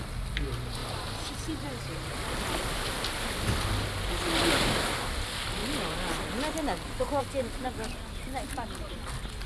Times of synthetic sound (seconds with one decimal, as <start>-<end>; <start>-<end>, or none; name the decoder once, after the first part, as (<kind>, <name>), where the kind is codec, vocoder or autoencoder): 0.8-2.3 (vocoder, BigVGAN v2)